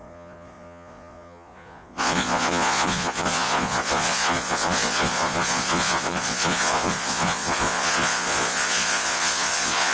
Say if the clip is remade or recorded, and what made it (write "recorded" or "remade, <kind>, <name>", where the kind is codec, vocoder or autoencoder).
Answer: remade, vocoder, Vocos